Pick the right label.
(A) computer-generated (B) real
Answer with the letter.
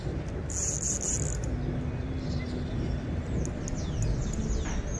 B